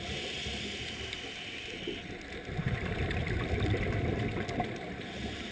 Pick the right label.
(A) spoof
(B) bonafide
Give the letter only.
B